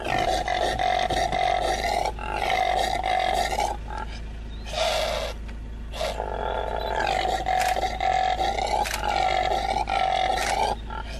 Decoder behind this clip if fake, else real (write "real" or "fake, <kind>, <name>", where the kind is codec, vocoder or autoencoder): real